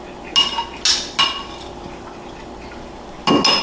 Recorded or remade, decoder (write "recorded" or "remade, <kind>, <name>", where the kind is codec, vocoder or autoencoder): recorded